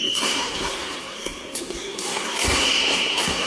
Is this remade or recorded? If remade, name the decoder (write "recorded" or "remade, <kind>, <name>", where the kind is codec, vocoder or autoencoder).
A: remade, codec, SNAC